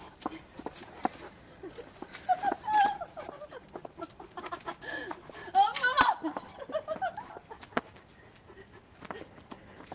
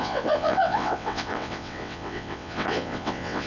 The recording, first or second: first